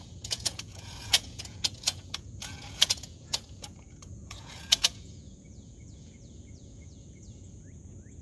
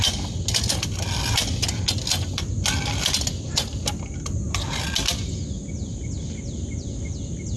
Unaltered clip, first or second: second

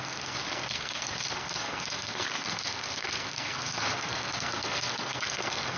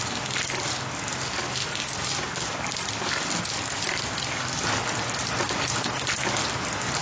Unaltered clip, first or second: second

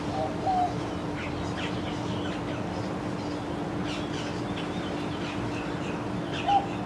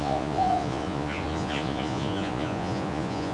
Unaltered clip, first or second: first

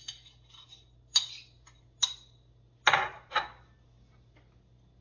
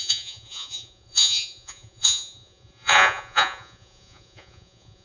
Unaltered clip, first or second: first